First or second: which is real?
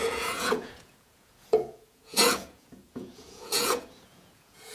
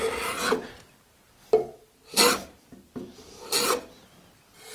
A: second